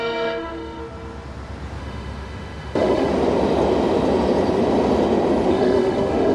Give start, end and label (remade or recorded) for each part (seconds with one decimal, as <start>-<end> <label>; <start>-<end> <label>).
0.0-0.8 remade; 0.8-1.8 recorded; 1.8-3.1 remade; 3.1-5.5 recorded; 5.5-6.3 remade